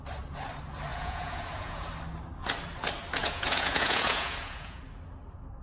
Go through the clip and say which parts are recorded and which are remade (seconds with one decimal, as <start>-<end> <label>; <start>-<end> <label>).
0.0-0.9 recorded; 0.9-1.9 remade; 1.9-3.2 recorded; 3.2-4.8 remade; 4.8-5.6 recorded